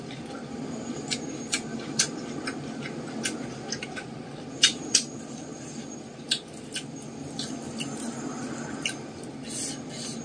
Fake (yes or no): yes